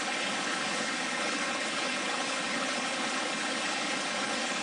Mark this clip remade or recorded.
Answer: remade